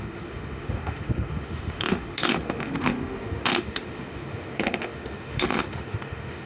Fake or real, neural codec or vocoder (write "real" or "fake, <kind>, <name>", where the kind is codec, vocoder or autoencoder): fake, autoencoder, DAC-VAE